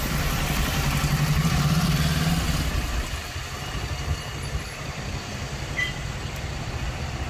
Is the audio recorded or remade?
remade